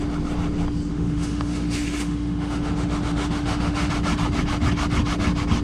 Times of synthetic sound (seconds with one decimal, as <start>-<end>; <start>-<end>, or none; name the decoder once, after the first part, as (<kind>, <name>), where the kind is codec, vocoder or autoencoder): 0.9-3.9 (autoencoder, DAC-VAE)